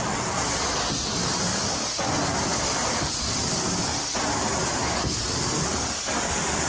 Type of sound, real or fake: real